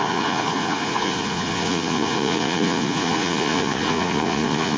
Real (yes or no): no